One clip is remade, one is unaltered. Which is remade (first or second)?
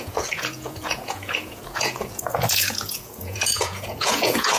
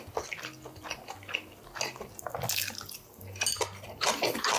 first